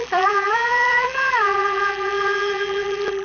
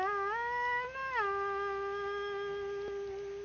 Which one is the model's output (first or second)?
first